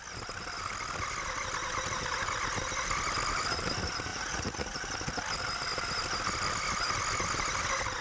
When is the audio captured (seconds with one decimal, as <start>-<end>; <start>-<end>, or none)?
0.0-4.1; 4.9-8.0

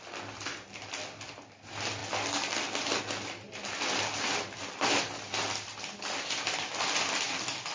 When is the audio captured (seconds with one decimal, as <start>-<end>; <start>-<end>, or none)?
0.0-7.7

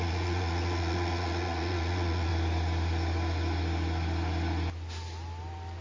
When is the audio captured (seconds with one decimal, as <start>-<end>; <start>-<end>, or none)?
2.3-5.8

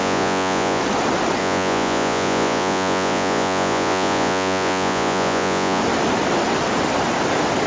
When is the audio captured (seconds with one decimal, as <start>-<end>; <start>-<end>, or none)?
0.8-1.4; 5.8-7.7

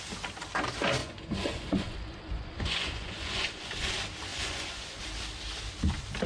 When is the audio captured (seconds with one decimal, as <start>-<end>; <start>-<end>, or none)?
0.0-1.0; 3.9-4.3; 5.0-6.3

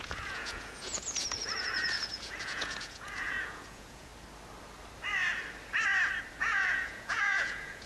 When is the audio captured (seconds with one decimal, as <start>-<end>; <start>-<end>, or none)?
4.1-6.4

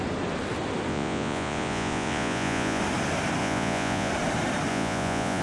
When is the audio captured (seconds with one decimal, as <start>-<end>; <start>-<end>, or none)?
0.0-0.9; 2.8-3.4; 4.1-4.7

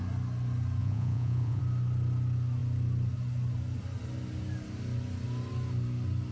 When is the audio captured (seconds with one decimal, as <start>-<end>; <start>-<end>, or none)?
0.0-0.8; 1.6-6.3